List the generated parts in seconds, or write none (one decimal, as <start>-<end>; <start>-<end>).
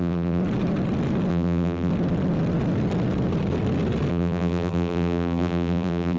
0.0-0.4; 1.3-1.9; 4.1-6.2